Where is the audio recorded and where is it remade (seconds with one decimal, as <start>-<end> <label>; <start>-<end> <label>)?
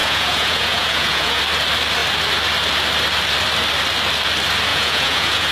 0.0-1.4 remade; 1.4-4.7 recorded; 4.7-5.5 remade